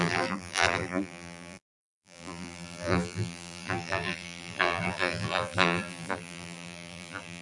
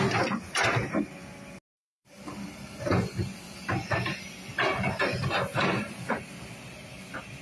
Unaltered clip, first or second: second